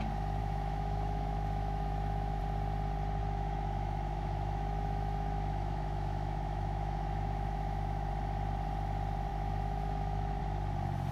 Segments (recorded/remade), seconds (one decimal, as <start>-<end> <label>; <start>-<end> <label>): 0.0-0.4 recorded; 0.4-2.4 remade; 2.4-3.2 recorded; 3.2-8.1 remade; 8.1-9.3 recorded; 9.3-10.4 remade; 10.4-11.1 recorded